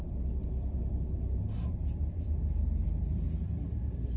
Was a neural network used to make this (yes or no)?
yes